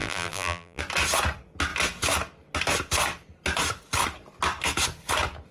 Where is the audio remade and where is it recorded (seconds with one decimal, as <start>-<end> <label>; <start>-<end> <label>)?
0.0-0.8 remade; 0.8-5.5 recorded